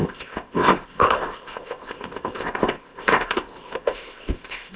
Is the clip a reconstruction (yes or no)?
yes